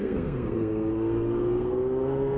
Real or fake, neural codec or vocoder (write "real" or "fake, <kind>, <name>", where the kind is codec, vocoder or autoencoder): fake, codec, SNAC